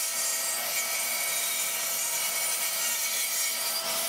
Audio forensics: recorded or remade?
remade